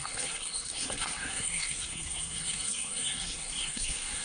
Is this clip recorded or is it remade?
remade